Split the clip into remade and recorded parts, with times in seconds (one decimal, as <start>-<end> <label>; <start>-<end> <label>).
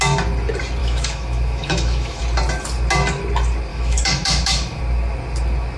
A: 0.0-0.8 recorded; 0.8-2.2 remade; 2.2-3.7 recorded; 3.7-4.8 remade; 4.8-5.8 recorded